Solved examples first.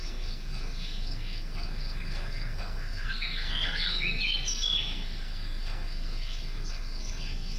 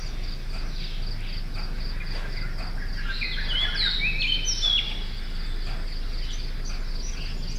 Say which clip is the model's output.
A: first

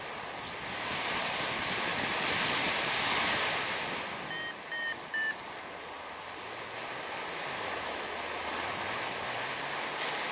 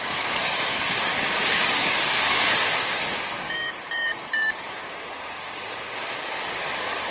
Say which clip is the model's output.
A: second